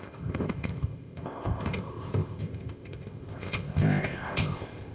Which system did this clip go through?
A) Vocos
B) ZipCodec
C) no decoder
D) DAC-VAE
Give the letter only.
B